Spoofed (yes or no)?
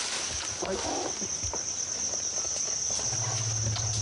no